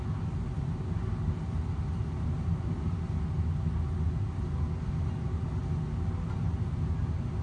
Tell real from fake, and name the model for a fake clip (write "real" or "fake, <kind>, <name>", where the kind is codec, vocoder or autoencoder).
real